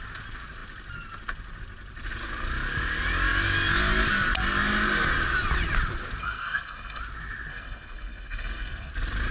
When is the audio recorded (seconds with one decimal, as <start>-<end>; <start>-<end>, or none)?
0.0-6.2; 7.0-7.5; 8.9-9.3